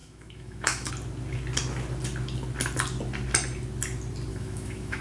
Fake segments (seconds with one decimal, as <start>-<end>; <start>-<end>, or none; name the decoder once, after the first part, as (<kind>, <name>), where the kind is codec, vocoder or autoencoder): 0.0-0.9 (autoencoder, DAC-VAE); 4.3-5.0